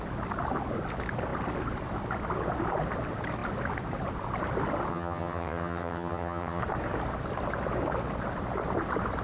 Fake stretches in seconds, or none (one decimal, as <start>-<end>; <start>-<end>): 4.9-6.6